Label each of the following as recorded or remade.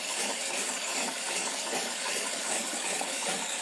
remade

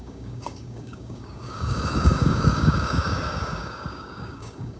remade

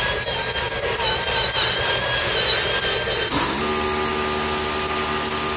recorded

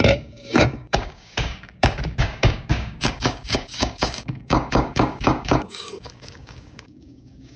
remade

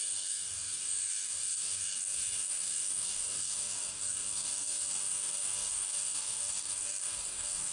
remade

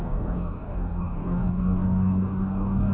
remade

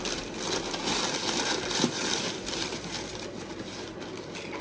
recorded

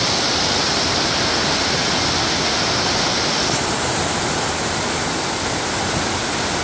recorded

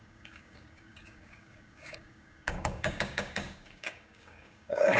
remade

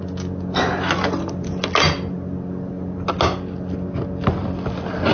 recorded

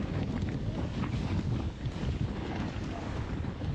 remade